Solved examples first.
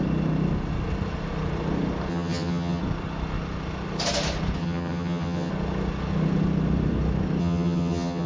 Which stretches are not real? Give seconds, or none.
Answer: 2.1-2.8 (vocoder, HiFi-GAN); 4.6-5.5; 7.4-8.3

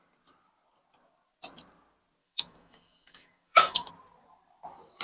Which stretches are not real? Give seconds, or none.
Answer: 2.2-3.9 (autoencoder, DAC-VAE)

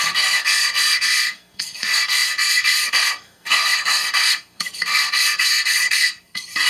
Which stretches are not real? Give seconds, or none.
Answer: 0.0-6.7 (codec, SNAC)

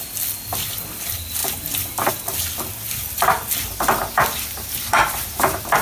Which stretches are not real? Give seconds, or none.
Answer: 4.0-5.8 (vocoder, BigVGAN v2)

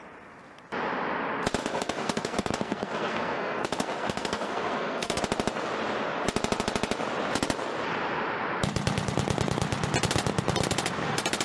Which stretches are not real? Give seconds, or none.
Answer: 1.6-5.2 (codec, SNAC)

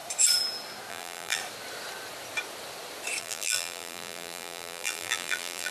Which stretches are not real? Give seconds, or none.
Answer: 0.9-1.4 (vocoder, BigVGAN v2); 3.2-5.7

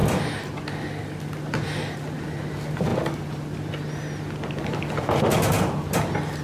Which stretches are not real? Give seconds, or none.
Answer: none

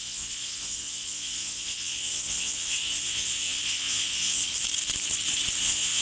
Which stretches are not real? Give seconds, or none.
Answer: 0.0-4.5 (vocoder, Vocos); 5.6-6.0